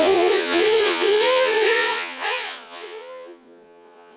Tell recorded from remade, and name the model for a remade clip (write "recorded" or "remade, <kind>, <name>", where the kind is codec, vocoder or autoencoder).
remade, vocoder, Vocos